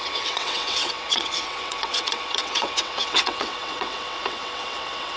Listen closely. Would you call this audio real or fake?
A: fake